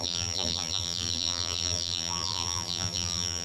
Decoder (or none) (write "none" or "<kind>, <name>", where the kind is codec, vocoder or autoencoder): vocoder, BigVGAN v2